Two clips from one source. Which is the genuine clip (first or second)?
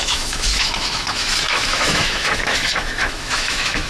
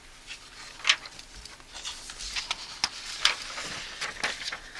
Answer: second